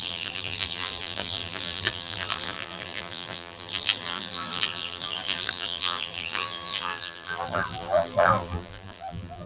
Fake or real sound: fake